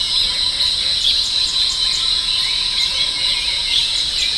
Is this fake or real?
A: fake